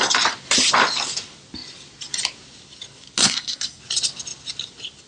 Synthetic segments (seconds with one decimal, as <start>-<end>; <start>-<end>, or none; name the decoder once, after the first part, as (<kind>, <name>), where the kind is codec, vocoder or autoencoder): 3.2-3.8 (codec, SNAC)